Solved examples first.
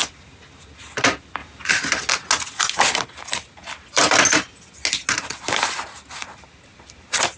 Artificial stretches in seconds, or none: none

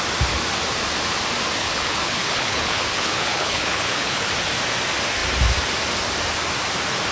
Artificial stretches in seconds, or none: 1.6-4.3 (codec, HILCodec)